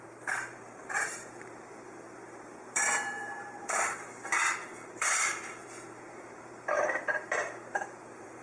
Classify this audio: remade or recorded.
remade